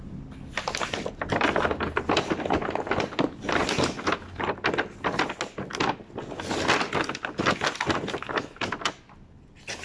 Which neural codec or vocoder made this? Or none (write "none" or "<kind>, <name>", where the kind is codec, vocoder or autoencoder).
none